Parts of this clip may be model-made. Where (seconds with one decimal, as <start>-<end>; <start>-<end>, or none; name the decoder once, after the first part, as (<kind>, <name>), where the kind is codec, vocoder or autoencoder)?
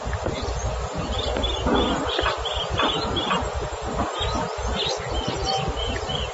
none